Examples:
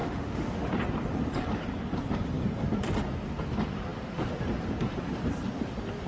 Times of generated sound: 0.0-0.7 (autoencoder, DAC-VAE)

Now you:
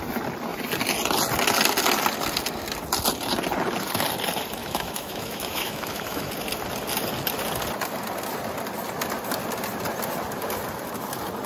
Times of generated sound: 4.6-6.3 (autoencoder, DAC-VAE)

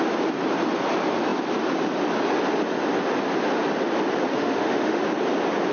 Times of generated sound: 4.3-5.0 (autoencoder, DAC-VAE)

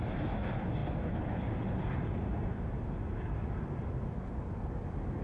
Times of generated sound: none

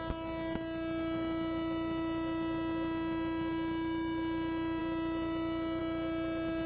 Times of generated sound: none

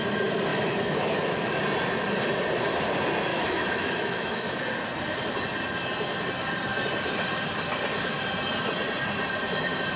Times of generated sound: 0.5-1.6 (autoencoder, DAC-VAE); 3.3-4.6

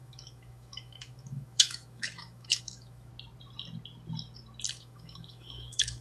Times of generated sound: 0.0-3.1 (autoencoder, DAC-VAE); 4.7-6.0